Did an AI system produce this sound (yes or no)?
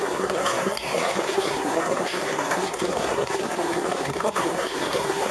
yes